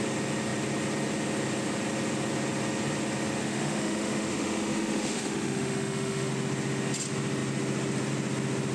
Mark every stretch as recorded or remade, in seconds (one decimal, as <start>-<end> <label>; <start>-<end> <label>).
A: 0.0-3.4 recorded; 3.4-6.3 remade; 6.3-8.7 recorded